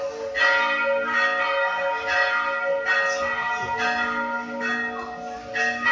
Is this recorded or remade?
recorded